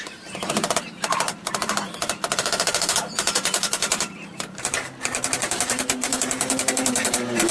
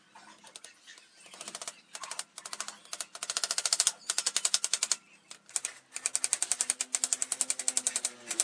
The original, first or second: second